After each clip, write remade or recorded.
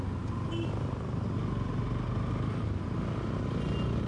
recorded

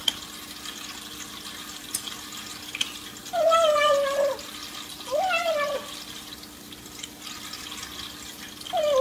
recorded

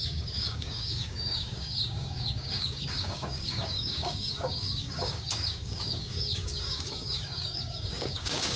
remade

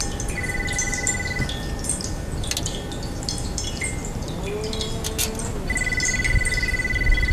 recorded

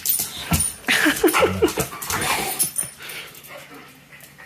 recorded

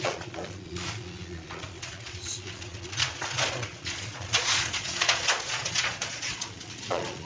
remade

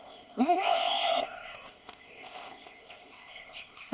remade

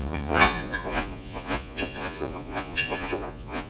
remade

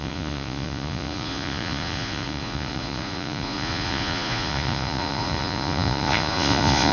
remade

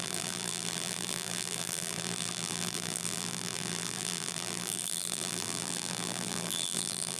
remade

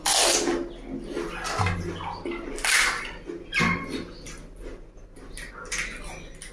recorded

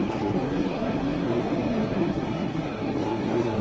remade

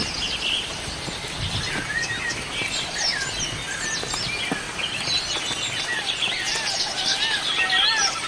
recorded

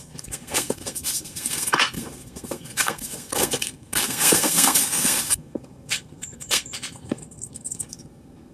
remade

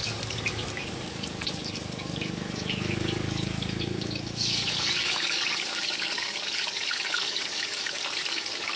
remade